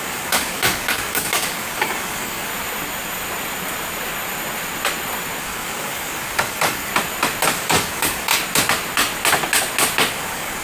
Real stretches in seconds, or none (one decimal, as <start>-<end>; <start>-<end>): 2.5-5.4; 6.9-7.5; 8.3-10.1